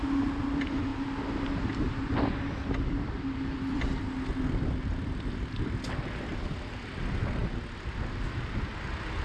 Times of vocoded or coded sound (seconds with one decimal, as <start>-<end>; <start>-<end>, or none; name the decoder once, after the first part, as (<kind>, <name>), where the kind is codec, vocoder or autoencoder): 6.3-7.0 (vocoder, BigVGAN v2)